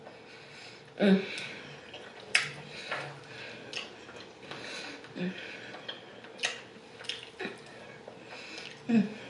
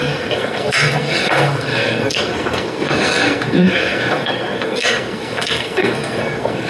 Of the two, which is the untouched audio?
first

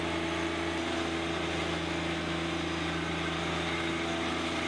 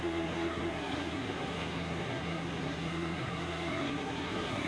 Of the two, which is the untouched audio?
first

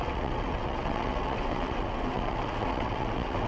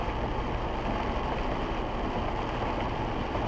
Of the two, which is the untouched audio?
second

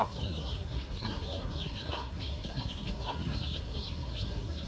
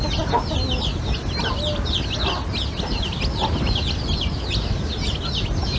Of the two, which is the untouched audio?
second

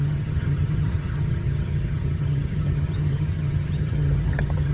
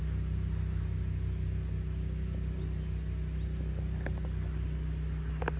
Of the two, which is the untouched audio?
second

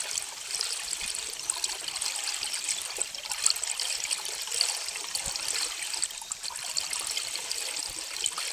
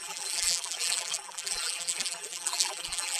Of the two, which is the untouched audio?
first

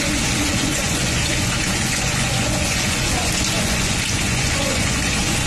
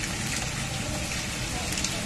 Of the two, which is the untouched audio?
second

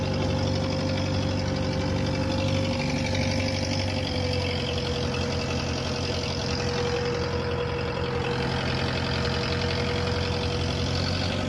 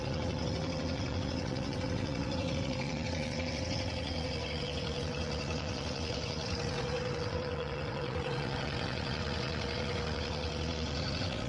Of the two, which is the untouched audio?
first